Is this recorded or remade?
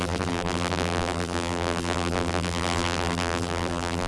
remade